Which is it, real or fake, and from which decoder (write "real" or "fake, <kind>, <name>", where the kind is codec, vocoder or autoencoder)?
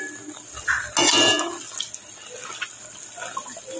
real